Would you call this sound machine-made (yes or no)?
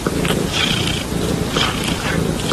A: no